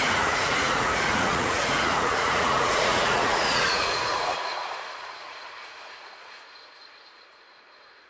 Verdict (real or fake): fake